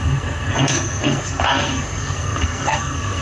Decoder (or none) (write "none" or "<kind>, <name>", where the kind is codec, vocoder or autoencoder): codec, SNAC